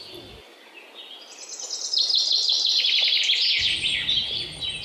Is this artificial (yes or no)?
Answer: no